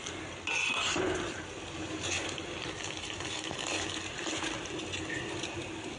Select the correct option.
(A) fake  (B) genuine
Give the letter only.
B